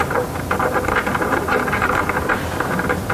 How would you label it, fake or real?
fake